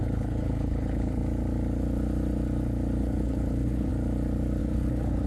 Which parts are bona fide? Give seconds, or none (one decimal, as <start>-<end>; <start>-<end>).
1.2-3.0; 3.9-4.6